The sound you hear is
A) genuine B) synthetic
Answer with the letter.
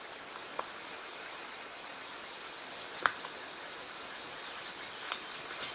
A